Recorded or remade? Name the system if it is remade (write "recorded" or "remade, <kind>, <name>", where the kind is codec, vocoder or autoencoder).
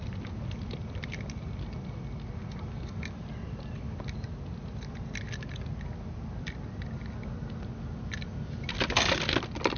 recorded